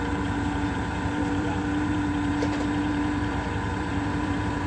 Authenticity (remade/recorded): remade